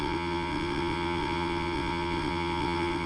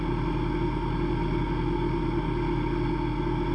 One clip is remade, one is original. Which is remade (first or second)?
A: first